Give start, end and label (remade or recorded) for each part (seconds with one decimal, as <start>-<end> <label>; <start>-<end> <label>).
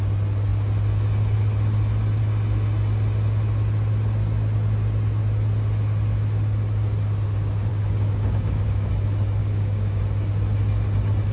0.0-7.7 recorded; 7.7-8.9 remade; 8.9-9.4 recorded; 9.4-10.0 remade; 10.0-11.3 recorded